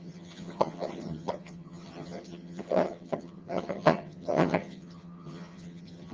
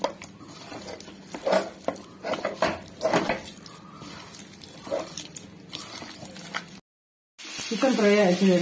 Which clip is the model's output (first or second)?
first